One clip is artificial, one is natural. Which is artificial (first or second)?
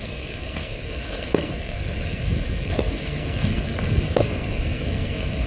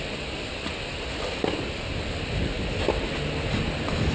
first